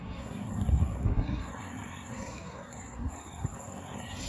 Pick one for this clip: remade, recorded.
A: remade